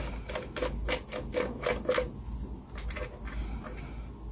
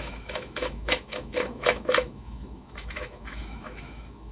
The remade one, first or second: second